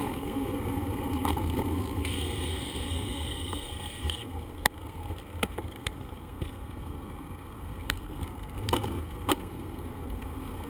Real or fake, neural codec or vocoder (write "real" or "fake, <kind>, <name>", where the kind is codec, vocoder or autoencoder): fake, codec, SNAC